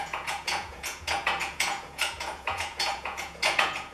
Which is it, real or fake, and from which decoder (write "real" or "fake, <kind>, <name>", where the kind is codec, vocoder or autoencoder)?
fake, vocoder, Vocos